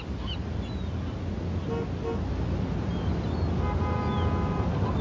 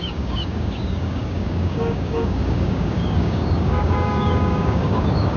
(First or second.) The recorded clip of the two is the first